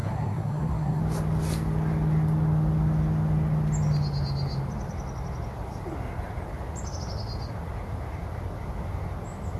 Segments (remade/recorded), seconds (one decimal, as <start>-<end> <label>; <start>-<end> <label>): 0.0-1.0 remade; 1.0-9.6 recorded